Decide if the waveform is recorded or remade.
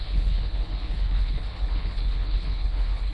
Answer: remade